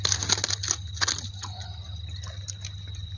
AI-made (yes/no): no